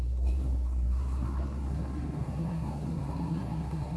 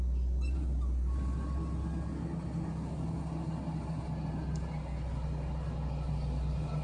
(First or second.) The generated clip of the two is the first